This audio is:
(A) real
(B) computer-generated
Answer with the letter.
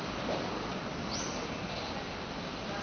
A